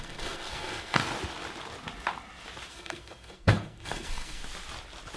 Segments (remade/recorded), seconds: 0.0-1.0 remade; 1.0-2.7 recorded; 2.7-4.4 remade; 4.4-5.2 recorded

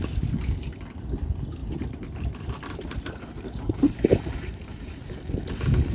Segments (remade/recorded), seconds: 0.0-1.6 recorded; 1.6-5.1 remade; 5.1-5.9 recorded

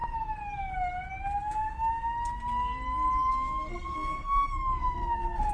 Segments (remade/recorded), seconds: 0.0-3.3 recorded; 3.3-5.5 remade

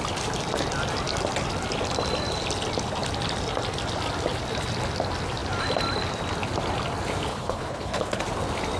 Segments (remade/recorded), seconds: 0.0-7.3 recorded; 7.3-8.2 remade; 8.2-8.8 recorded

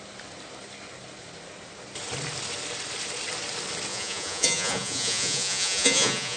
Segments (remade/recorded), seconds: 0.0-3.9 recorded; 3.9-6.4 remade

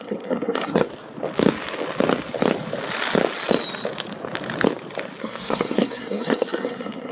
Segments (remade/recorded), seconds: 0.0-0.9 remade; 0.9-5.2 recorded; 5.2-7.1 remade